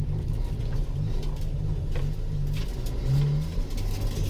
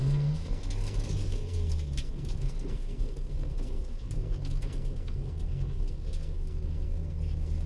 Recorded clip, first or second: first